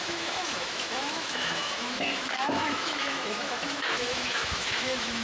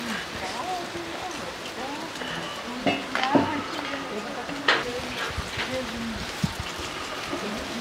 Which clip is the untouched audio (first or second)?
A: second